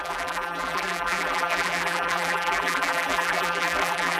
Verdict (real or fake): fake